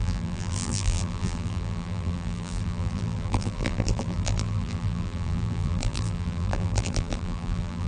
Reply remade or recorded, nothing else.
remade